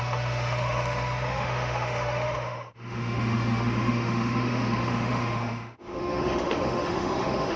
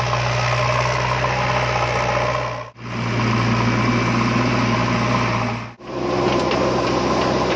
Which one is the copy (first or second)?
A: first